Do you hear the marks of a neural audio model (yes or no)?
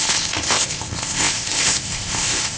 yes